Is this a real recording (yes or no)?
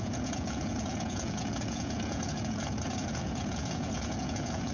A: no